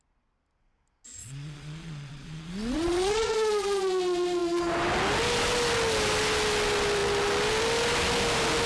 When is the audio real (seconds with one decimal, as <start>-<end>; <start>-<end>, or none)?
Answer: 0.0-1.2; 3.8-8.7